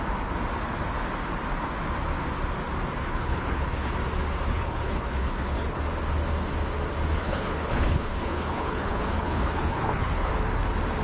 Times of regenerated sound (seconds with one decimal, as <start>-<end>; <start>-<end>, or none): 3.1-3.9; 4.5-5.8; 7.2-10.3